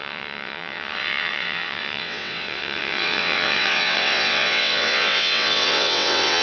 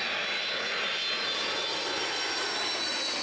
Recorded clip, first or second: second